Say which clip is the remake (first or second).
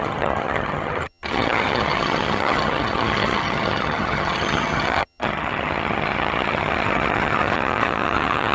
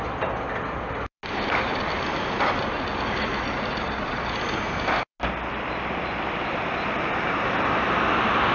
first